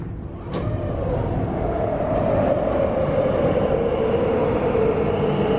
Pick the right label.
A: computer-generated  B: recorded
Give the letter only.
B